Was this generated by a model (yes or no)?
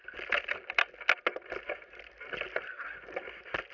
no